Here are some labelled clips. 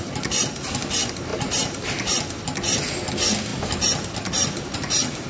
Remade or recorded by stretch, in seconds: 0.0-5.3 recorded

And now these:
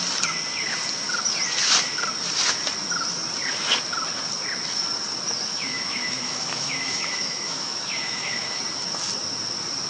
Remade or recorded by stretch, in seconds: 0.0-5.5 recorded; 5.5-8.6 remade; 8.6-9.9 recorded

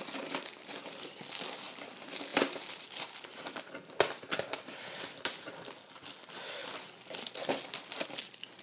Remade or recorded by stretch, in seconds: 0.0-8.6 recorded